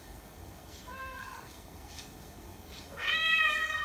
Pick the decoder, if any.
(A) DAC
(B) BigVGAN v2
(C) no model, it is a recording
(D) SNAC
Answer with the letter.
D